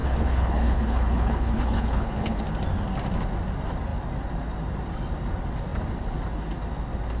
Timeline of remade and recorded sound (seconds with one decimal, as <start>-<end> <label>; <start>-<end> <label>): 0.0-2.4 remade; 2.4-7.2 recorded